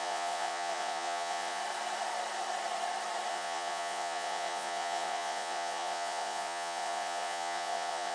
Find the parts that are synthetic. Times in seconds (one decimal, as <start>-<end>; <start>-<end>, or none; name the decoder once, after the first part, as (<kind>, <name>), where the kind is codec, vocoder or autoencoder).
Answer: 0.0-1.6 (vocoder, Vocos); 3.3-8.1